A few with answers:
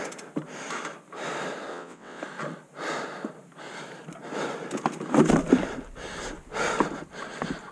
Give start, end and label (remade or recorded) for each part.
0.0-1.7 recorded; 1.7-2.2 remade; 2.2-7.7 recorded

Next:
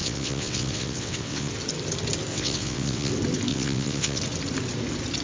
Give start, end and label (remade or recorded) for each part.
0.0-1.5 remade; 1.5-2.3 recorded; 2.3-3.1 remade; 3.1-3.5 recorded; 3.5-4.2 remade; 4.2-5.2 recorded

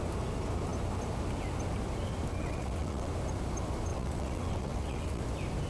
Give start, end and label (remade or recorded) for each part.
0.0-2.4 recorded; 2.4-3.1 remade; 3.1-3.9 recorded; 3.9-5.2 remade; 5.2-5.7 recorded